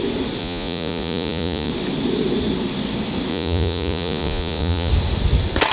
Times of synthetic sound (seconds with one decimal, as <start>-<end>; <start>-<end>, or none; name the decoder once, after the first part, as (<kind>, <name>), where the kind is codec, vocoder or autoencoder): 0.4-1.7 (vocoder, Vocos); 3.3-4.9